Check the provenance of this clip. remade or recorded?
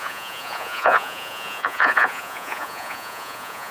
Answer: remade